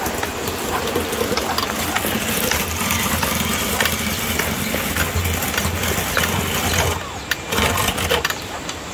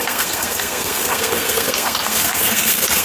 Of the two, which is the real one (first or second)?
first